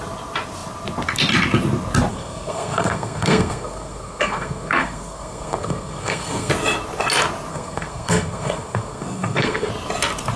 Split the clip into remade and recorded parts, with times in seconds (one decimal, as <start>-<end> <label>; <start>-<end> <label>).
0.0-2.1 recorded; 2.1-6.5 remade; 6.5-7.5 recorded; 7.5-9.7 remade; 9.7-10.4 recorded